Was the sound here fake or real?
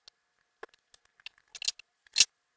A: real